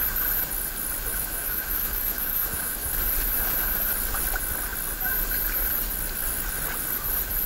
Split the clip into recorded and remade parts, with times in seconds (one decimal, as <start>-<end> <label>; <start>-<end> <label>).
0.0-1.1 recorded; 1.1-2.9 remade; 2.9-7.5 recorded